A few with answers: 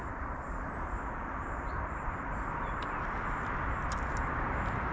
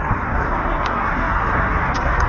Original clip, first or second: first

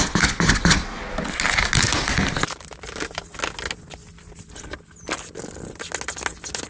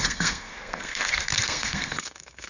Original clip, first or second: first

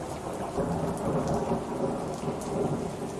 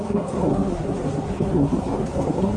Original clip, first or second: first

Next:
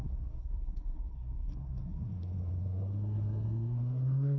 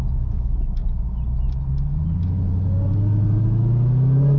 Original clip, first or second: second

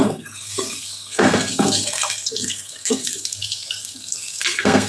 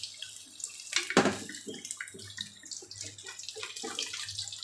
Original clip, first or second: second